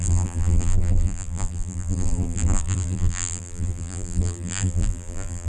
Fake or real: fake